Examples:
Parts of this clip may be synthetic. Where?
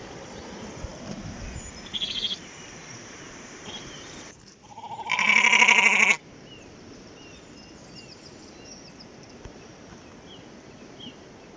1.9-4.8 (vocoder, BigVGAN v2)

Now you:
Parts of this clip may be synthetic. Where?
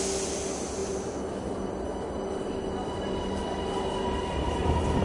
0.8-3.5 (vocoder, BigVGAN v2)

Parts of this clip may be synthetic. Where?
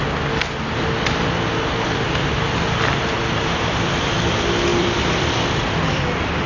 4.7-6.0 (vocoder, BigVGAN v2)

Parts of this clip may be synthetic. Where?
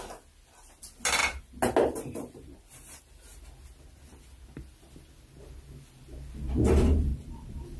7.1-7.8 (vocoder, BigVGAN v2)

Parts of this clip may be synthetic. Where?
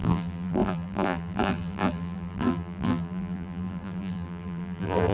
0.0-5.1 (vocoder, BigVGAN v2)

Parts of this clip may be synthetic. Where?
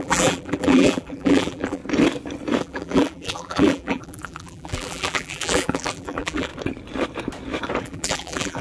0.0-1.8 (vocoder, BigVGAN v2); 2.6-6.5; 7.8-8.6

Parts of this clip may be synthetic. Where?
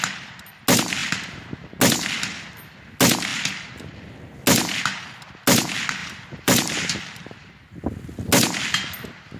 6.0-7.7 (vocoder, BigVGAN v2)